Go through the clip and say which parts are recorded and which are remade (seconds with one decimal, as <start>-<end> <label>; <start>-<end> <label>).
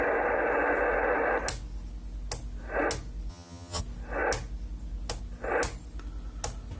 0.0-3.3 recorded; 3.3-3.8 remade; 3.8-6.8 recorded